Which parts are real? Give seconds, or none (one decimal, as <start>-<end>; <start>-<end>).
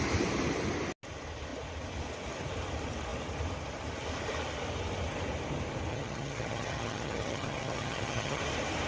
0.0-5.9; 8.4-8.9